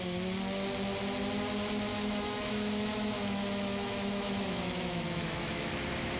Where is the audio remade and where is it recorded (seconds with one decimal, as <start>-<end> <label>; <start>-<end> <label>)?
0.0-1.9 recorded; 1.9-5.6 remade; 5.6-6.2 recorded